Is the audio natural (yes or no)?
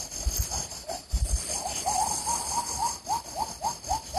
yes